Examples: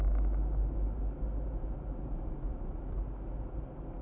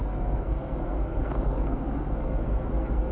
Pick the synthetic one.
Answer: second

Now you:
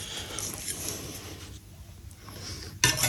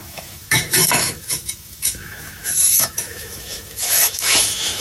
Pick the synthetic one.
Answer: second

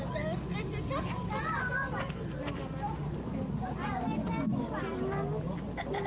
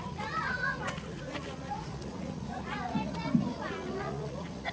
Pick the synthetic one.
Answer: second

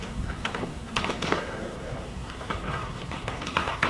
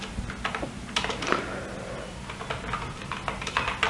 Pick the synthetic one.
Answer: first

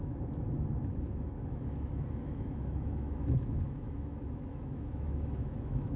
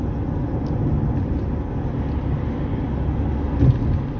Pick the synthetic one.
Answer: first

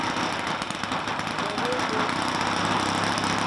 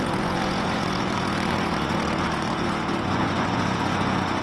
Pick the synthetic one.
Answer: second